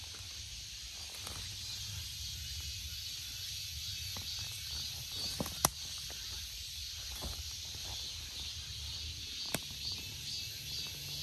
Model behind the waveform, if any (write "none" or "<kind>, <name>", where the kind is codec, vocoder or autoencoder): none